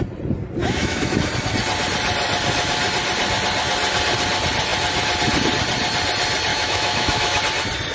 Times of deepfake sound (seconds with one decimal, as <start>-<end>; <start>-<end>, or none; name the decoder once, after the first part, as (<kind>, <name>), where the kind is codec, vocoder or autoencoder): 0.6-1.3 (autoencoder, DAC-VAE); 6.5-7.4